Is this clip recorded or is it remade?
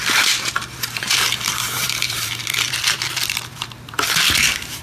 remade